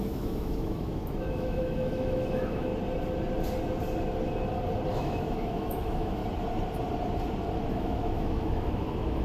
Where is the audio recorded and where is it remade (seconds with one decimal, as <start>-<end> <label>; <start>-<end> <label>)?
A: 0.0-2.7 remade; 2.7-4.9 recorded; 4.9-6.2 remade; 6.2-7.7 recorded; 7.7-9.2 remade